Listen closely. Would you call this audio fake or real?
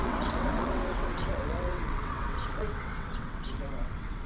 fake